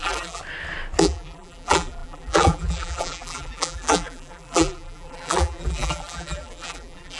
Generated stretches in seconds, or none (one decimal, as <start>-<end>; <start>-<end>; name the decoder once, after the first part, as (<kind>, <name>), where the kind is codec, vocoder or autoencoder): 0.0-0.4 (vocoder, BigVGAN v2); 1.0-7.2